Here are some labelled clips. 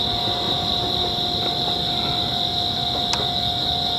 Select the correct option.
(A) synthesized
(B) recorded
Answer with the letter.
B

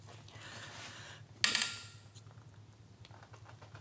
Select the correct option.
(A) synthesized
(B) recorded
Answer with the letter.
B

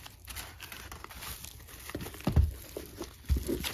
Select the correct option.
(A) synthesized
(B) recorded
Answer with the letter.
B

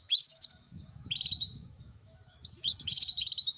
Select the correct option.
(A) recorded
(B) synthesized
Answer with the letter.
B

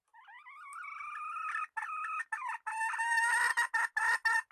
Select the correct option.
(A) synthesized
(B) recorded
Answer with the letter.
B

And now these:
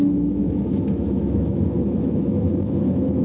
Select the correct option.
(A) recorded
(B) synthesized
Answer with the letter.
B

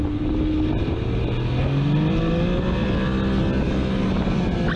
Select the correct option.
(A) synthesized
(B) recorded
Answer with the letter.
B